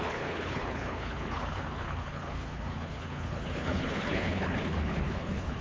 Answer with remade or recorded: remade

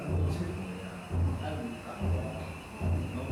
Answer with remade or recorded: recorded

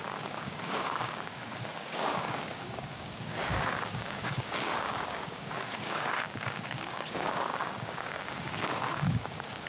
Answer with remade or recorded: remade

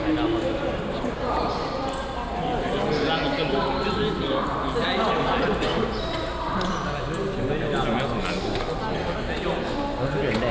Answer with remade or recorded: recorded